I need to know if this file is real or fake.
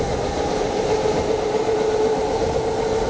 real